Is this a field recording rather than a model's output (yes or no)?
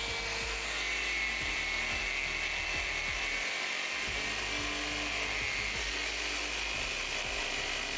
yes